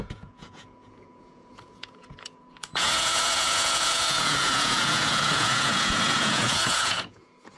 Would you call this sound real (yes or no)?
no